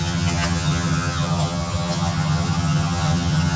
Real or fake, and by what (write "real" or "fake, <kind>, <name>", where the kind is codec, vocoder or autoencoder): fake, vocoder, HiFi-GAN